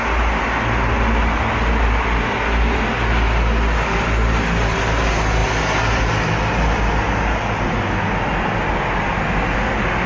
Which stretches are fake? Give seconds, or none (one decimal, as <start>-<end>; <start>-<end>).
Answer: none